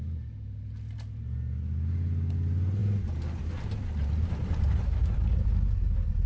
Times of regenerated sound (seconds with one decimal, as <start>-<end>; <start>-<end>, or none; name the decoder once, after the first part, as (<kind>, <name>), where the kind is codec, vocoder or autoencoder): none